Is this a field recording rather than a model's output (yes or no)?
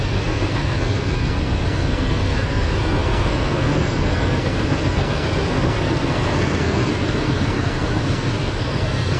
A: no